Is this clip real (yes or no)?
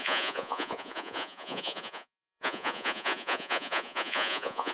no